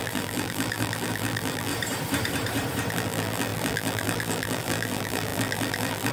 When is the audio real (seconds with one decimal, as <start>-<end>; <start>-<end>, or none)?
1.7-2.9